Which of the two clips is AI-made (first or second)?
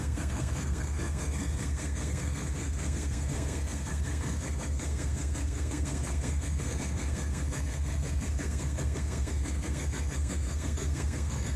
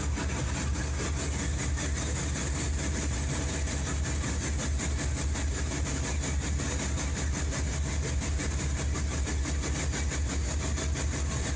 first